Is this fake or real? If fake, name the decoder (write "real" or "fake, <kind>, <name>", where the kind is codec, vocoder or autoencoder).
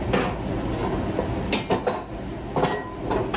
real